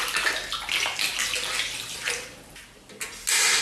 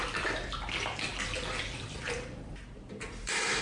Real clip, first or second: first